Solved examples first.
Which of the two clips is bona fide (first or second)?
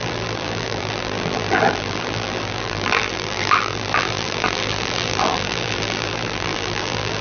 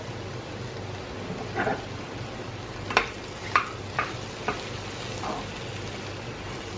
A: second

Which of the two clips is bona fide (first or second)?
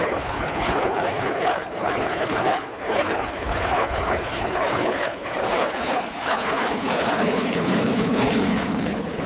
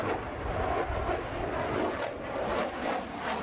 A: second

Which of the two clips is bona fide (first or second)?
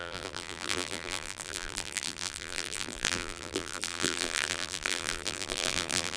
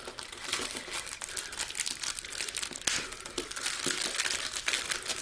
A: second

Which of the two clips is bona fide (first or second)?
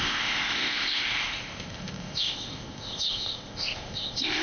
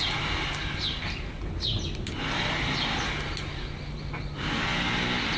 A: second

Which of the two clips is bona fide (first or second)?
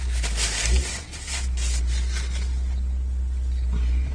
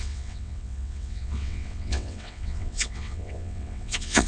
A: first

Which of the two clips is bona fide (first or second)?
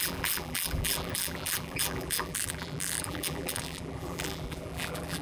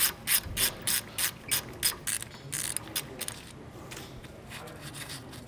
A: second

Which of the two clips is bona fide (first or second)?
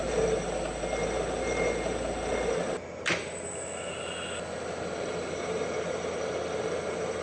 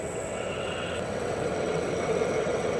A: first